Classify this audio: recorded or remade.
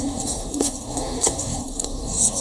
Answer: remade